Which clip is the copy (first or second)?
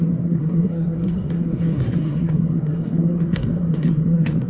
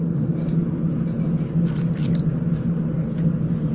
first